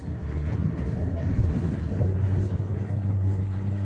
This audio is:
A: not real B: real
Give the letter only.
A